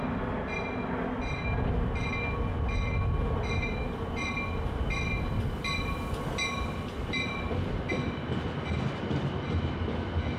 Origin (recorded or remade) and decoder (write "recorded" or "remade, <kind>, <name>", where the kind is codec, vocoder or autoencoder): recorded